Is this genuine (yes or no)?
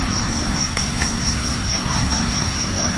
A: no